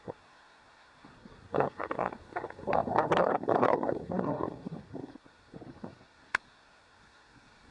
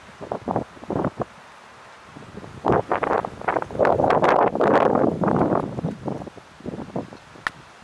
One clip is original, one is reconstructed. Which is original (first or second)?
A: second